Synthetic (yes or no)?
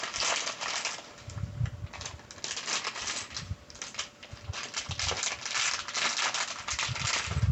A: no